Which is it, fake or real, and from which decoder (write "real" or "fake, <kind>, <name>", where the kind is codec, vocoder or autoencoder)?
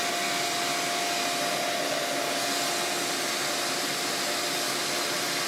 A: real